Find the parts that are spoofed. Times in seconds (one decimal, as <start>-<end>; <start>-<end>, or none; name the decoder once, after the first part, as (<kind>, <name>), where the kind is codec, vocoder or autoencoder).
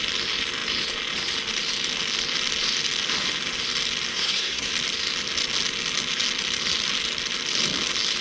4.1-4.7 (codec, SNAC)